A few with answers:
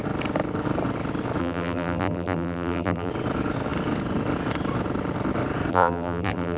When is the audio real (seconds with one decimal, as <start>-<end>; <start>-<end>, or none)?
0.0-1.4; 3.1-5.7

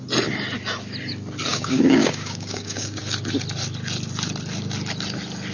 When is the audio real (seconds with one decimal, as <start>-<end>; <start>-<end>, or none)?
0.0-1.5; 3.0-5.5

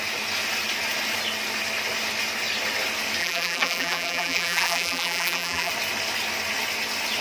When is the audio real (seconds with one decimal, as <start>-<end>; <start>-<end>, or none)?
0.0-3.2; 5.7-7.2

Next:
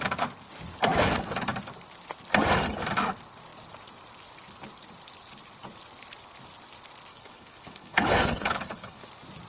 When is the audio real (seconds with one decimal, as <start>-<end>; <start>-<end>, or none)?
0.0-7.1; 9.0-9.5